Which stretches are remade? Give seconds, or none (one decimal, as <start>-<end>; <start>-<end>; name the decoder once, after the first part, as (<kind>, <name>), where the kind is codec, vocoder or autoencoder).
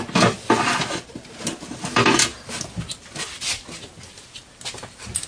none